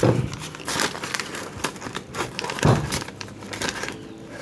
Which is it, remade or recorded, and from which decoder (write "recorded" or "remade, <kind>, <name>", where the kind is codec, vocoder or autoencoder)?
recorded